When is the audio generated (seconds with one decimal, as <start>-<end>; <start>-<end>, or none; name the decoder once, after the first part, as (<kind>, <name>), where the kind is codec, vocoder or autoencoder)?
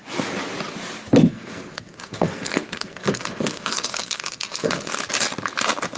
1.3-4.9 (codec, SNAC)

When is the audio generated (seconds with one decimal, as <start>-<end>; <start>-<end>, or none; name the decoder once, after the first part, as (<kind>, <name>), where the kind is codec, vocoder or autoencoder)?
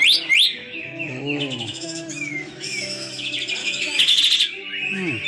0.6-3.2 (autoencoder, DAC-VAE); 3.6-4.2